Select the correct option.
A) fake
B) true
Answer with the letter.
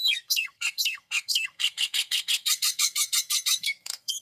A